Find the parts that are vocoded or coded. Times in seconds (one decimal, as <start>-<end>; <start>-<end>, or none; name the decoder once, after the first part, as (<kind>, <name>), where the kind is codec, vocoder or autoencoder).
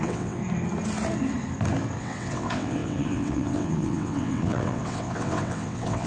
0.0-0.4 (vocoder, WaveNeXt); 2.0-6.1